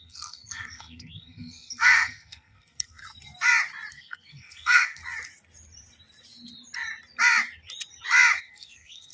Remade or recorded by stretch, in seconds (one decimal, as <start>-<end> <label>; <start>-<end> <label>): 0.0-3.0 remade; 3.0-3.9 recorded; 3.9-5.0 remade; 5.0-8.4 recorded; 8.4-9.1 remade